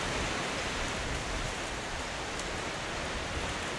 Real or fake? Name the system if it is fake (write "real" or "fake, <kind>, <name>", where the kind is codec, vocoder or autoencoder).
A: real